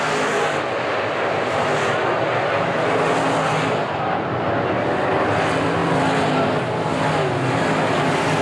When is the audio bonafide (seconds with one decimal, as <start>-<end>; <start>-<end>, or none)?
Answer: 0.0-8.4